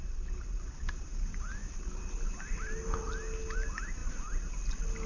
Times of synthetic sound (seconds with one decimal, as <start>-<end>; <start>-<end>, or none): none